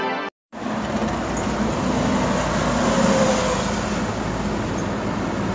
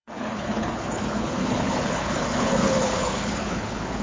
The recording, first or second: first